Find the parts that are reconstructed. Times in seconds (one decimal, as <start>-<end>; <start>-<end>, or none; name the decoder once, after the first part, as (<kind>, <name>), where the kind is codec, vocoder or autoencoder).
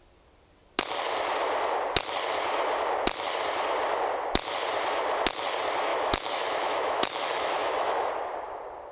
5.9-8.1 (autoencoder, DAC-VAE)